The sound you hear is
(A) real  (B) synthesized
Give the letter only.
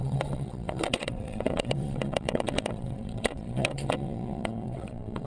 B